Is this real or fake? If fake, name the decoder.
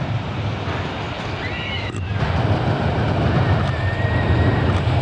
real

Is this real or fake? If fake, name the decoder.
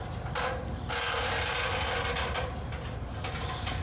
real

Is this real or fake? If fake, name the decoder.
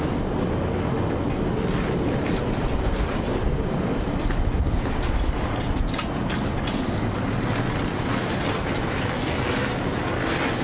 real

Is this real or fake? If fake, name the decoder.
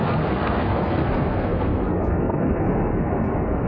fake, codec, SNAC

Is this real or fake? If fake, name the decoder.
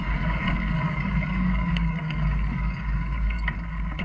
fake, codec, DAC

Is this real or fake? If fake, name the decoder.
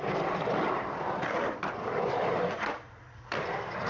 fake, vocoder, BigVGAN v2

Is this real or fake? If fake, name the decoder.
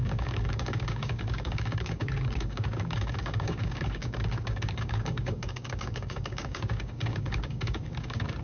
fake, codec, DAC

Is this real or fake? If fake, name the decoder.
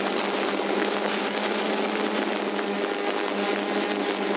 real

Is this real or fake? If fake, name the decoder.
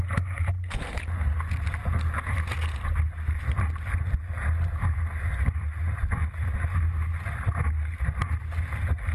real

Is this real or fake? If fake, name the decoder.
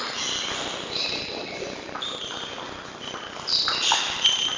real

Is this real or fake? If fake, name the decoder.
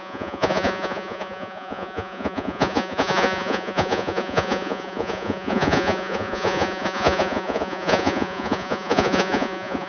fake, vocoder, Vocos